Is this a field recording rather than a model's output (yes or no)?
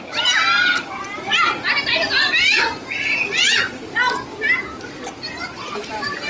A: yes